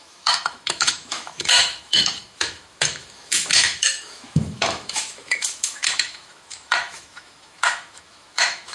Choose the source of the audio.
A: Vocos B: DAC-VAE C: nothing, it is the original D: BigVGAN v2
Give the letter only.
B